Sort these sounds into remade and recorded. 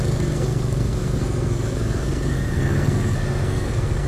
remade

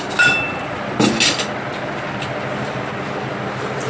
recorded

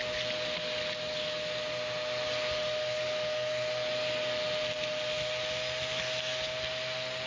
recorded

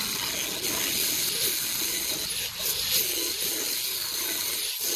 recorded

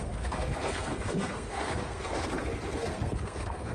remade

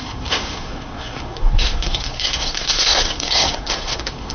remade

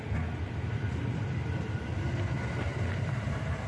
remade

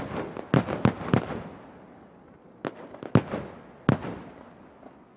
recorded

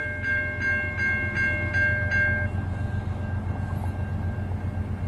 recorded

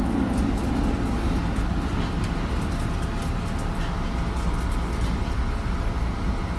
recorded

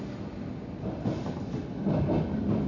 recorded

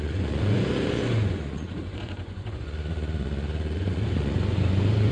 remade